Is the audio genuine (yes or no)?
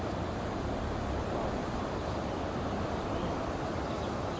yes